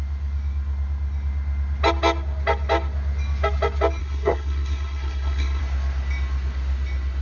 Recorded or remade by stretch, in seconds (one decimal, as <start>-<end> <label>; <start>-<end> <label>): 0.0-4.0 recorded; 4.0-5.6 remade; 5.6-7.2 recorded